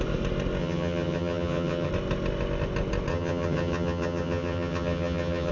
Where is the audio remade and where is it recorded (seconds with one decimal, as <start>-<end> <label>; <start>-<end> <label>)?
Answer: 0.0-0.6 recorded; 0.6-1.9 remade; 1.9-3.1 recorded; 3.1-5.5 remade